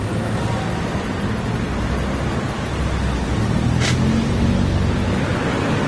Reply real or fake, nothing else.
real